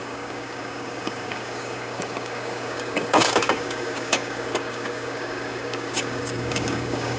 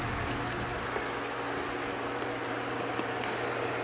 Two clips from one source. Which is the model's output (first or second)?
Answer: first